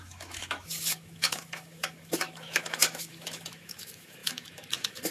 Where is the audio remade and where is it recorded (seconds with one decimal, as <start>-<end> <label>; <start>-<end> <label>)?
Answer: 0.0-5.1 remade